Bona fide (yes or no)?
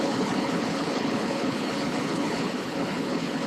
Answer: no